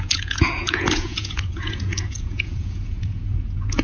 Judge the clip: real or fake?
fake